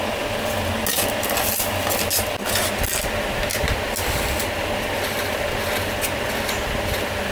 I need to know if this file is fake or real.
real